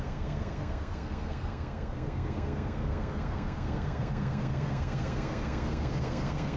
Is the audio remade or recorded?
remade